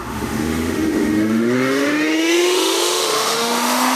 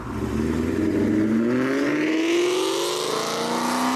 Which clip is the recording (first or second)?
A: second